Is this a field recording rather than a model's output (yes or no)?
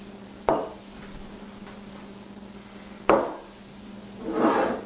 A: yes